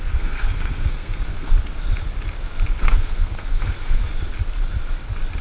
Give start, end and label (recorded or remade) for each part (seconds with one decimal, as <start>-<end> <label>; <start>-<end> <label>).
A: 0.0-1.5 remade; 1.5-2.8 recorded; 2.8-4.1 remade; 4.1-5.4 recorded